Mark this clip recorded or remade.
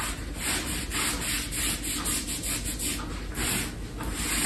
recorded